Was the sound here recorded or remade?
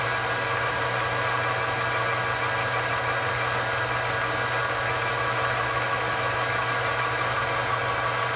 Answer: recorded